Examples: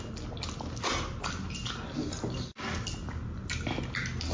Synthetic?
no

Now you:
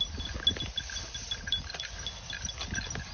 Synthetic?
no